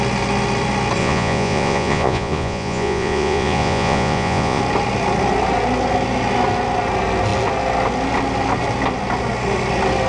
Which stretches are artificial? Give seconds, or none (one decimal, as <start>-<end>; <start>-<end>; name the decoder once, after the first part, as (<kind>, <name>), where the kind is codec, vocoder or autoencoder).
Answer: 1.0-4.6 (vocoder, Vocos)